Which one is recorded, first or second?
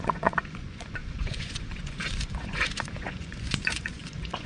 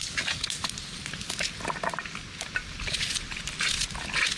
second